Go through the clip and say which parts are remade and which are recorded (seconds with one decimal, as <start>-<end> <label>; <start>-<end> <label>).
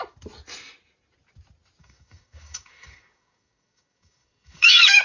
0.0-1.8 recorded; 1.8-5.0 remade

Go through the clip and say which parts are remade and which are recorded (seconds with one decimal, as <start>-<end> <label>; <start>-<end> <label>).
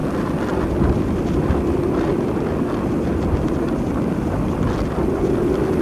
0.0-5.8 recorded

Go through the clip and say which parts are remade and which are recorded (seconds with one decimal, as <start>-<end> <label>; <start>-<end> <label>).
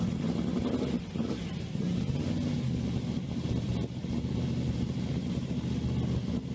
0.0-1.5 recorded; 1.5-5.4 remade; 5.4-6.5 recorded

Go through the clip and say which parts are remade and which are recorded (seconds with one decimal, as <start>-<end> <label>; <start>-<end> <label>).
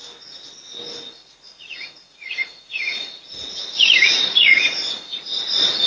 0.0-1.2 recorded; 1.2-3.4 remade; 3.4-4.0 recorded; 4.0-5.2 remade; 5.2-5.9 recorded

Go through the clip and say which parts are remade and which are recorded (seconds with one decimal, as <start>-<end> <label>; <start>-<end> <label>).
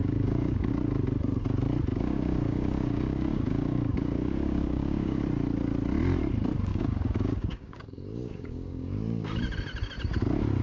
0.0-0.7 remade; 0.7-1.9 recorded; 1.9-5.2 remade; 5.2-6.7 recorded; 6.7-9.4 remade; 9.4-10.6 recorded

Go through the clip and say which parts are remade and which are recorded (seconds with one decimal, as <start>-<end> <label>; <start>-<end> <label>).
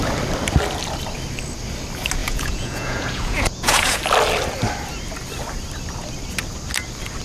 0.0-2.2 recorded; 2.2-4.0 remade; 4.0-7.2 recorded